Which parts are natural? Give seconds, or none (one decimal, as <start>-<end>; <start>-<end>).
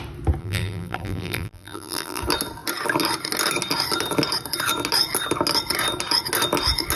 0.0-0.4; 2.2-7.0